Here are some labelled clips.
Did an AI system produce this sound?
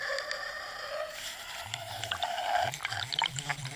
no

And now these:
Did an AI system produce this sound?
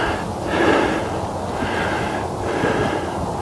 no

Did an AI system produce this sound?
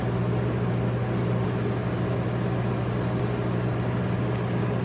no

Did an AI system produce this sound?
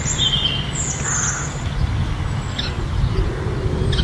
no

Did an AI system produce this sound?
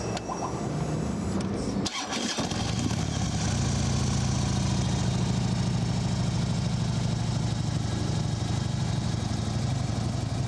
no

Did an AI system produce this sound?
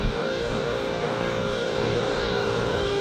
yes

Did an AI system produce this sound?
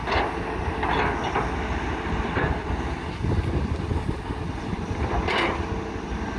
no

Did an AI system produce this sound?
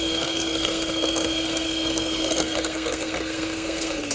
yes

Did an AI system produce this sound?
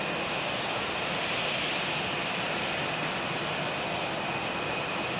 no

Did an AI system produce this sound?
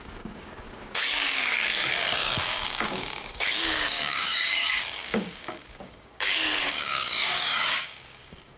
yes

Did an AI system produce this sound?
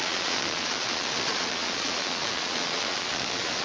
yes